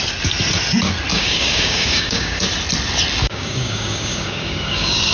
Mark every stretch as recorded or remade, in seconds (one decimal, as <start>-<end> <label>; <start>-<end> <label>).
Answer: 0.0-1.1 recorded; 1.1-2.4 remade; 2.4-3.2 recorded; 3.2-5.1 remade